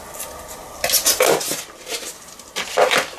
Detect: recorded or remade recorded